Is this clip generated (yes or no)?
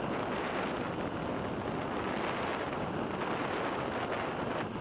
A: no